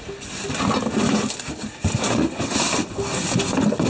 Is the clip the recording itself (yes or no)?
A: yes